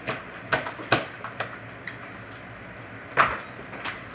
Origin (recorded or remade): recorded